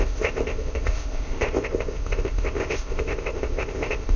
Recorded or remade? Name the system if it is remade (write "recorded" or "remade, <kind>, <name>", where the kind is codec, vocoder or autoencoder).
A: remade, codec, ZipCodec